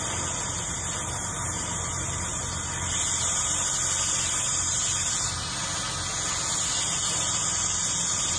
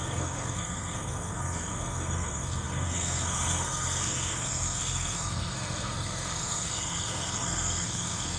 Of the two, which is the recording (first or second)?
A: first